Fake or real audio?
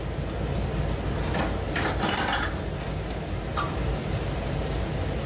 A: real